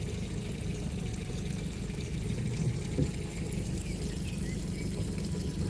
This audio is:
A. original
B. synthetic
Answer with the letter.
A